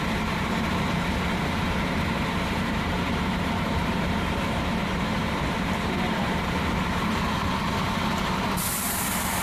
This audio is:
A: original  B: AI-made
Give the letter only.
B